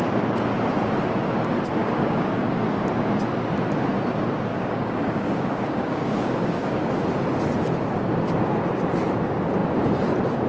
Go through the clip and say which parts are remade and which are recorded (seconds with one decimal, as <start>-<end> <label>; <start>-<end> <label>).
0.0-1.8 recorded; 1.8-2.4 remade; 2.4-4.5 recorded; 4.5-6.9 remade; 6.9-10.5 recorded